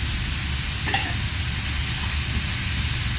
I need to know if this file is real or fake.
real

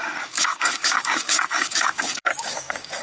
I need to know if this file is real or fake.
fake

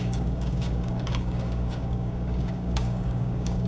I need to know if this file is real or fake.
fake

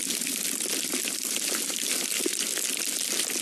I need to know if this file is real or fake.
real